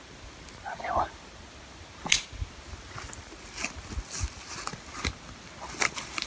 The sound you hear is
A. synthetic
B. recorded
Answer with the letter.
B